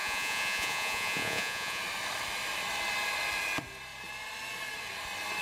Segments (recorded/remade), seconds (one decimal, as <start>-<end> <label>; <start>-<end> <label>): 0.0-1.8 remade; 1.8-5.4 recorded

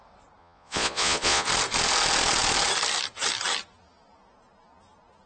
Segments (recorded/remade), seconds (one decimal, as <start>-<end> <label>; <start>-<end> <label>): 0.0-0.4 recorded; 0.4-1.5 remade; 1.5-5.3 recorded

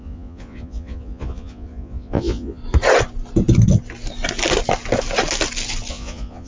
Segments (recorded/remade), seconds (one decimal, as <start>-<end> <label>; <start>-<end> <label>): 0.0-2.6 remade; 2.6-5.9 recorded; 5.9-6.5 remade